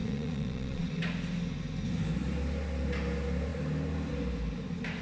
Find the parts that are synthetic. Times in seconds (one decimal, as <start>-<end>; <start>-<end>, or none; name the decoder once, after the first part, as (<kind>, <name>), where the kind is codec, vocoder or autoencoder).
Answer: 0.0-1.0 (vocoder, Vocos)